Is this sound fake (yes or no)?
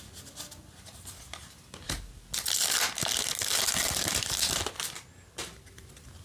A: no